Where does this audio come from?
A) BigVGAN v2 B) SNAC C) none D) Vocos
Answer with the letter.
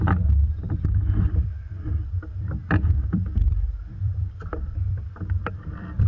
A